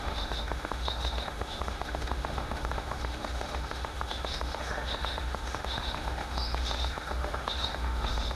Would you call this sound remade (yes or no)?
yes